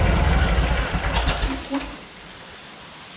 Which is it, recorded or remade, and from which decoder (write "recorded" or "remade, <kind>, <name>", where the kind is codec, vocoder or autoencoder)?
recorded